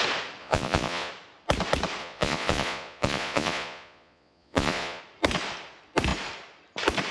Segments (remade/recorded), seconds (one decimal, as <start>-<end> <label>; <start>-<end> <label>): 0.0-0.4 recorded; 0.4-1.1 remade; 1.1-2.0 recorded; 2.0-5.0 remade; 5.0-7.1 recorded